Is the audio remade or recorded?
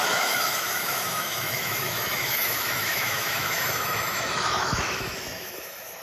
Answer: remade